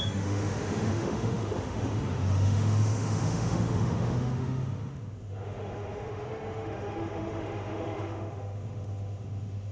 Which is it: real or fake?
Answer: fake